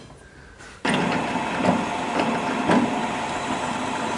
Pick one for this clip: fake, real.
real